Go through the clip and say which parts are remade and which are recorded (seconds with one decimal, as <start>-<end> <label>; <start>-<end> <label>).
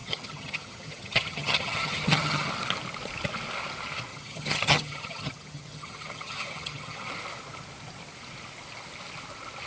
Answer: 0.0-2.5 remade; 2.5-4.1 recorded; 4.1-7.1 remade; 7.1-9.7 recorded